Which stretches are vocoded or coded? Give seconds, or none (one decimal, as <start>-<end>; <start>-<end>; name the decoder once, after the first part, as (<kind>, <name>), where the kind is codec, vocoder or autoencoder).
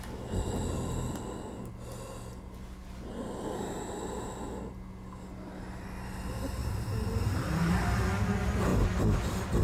none